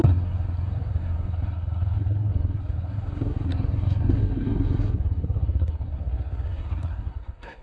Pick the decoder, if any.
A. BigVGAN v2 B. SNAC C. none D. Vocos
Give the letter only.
B